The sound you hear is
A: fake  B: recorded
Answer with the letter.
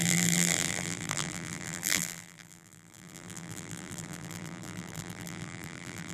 A